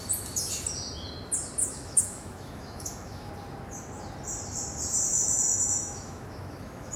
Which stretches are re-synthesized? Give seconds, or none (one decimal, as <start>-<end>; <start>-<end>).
1.6-3.3; 5.1-7.0